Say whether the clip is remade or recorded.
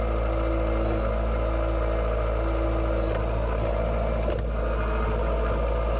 recorded